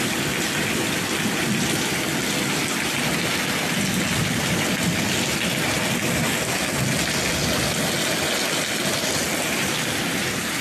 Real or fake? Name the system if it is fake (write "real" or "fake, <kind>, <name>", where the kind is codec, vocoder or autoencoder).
real